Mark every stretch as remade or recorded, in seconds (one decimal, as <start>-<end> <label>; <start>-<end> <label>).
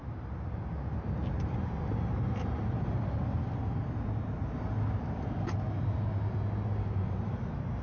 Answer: 0.0-7.8 recorded